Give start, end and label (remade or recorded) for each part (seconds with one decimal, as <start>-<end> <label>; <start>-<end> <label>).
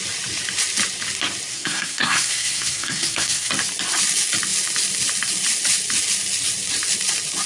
0.0-1.5 recorded; 1.5-3.5 remade; 3.5-7.5 recorded